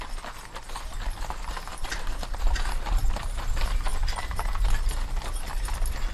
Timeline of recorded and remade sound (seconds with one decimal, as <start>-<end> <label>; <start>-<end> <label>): 0.0-1.7 recorded; 1.7-3.5 remade; 3.5-6.1 recorded